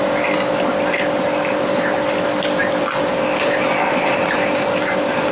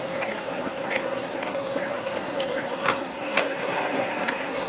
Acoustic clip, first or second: first